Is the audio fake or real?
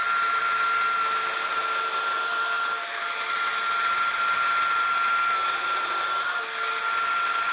real